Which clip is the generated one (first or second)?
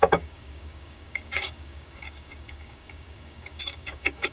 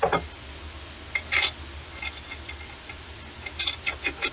first